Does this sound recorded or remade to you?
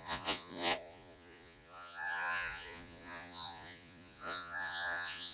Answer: remade